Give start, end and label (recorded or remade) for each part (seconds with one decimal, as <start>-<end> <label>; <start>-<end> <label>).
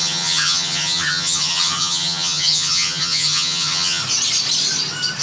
0.0-4.0 remade; 4.0-5.2 recorded